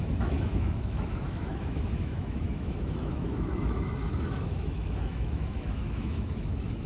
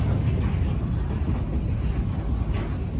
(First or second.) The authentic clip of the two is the second